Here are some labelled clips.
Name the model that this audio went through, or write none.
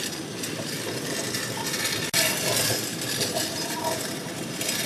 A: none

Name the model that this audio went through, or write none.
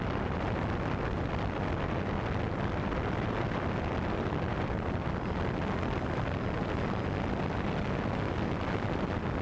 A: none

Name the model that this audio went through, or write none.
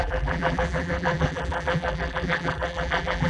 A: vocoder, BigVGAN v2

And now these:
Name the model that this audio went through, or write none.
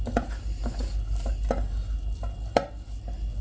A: none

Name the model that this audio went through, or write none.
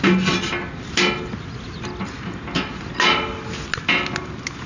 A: none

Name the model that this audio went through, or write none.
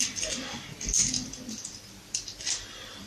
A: vocoder, BigVGAN v2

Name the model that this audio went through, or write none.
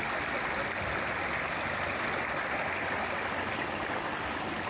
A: none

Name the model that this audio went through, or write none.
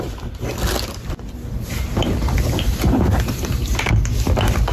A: none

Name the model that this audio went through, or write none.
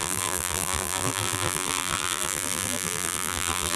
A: vocoder, BigVGAN v2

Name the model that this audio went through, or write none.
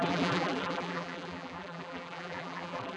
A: vocoder, BigVGAN v2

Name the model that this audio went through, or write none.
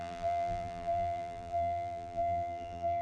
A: vocoder, BigVGAN v2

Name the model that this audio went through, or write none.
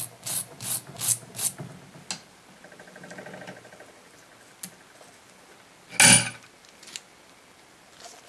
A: none